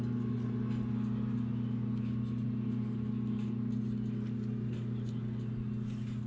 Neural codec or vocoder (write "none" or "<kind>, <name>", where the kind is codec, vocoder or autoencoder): none